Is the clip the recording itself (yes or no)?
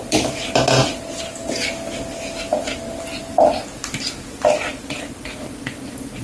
yes